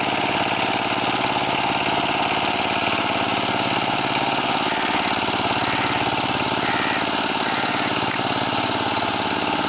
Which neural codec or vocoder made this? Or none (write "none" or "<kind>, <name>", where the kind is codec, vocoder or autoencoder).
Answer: none